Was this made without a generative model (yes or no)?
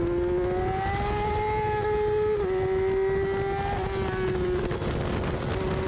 yes